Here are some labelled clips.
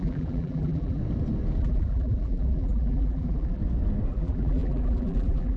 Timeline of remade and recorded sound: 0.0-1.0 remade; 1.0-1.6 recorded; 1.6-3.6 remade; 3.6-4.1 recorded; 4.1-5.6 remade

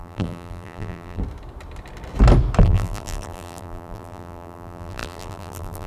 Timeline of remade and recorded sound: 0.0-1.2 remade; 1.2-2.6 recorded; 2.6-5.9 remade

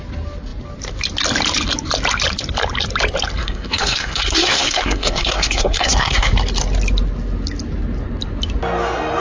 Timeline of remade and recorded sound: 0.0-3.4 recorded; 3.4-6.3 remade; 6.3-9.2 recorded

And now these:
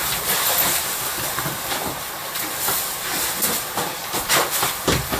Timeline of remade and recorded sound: 0.0-0.7 recorded; 0.7-2.9 remade; 2.9-5.2 recorded

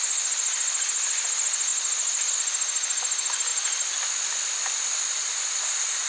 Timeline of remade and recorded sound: 0.0-6.1 recorded

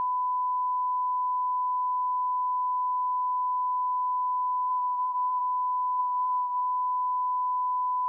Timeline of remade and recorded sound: 0.0-4.7 recorded; 4.7-5.4 remade; 5.4-6.0 recorded; 6.0-6.6 remade; 6.6-8.1 recorded